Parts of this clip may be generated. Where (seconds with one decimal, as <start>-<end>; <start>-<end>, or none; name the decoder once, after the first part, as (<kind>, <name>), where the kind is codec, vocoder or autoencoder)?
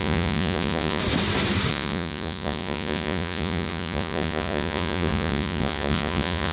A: 0.0-1.0 (vocoder, Vocos); 1.7-6.5